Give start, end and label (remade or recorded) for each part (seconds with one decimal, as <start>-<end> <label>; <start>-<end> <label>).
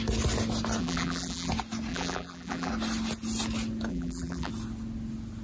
0.0-0.8 recorded; 0.8-1.5 remade; 1.5-1.9 recorded; 1.9-2.7 remade; 2.7-3.9 recorded; 3.9-4.5 remade; 4.5-5.4 recorded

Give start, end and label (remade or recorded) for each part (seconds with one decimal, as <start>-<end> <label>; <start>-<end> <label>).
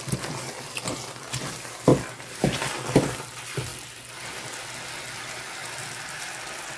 0.0-1.9 recorded; 1.9-2.4 remade; 2.4-3.7 recorded; 3.7-4.2 remade; 4.2-6.8 recorded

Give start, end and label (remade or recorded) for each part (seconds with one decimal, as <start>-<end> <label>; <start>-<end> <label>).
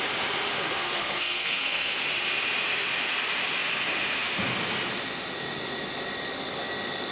0.0-0.5 recorded; 0.5-2.0 remade; 2.0-7.1 recorded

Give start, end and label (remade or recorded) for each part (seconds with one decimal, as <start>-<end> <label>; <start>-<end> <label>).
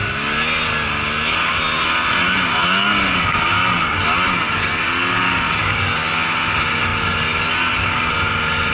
0.0-8.7 recorded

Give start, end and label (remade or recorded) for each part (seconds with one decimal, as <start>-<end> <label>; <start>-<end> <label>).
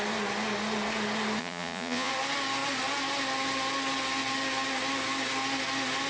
0.0-1.4 recorded; 1.4-2.1 remade; 2.1-6.1 recorded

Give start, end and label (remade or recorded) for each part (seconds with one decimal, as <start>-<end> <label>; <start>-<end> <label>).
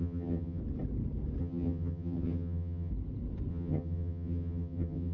0.0-0.6 remade; 0.6-1.4 recorded; 1.4-2.9 remade; 2.9-3.5 recorded; 3.5-5.1 remade